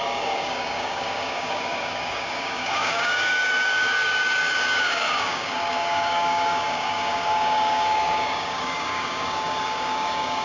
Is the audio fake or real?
fake